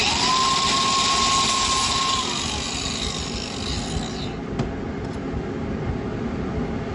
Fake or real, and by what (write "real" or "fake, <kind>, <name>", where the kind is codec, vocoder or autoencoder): real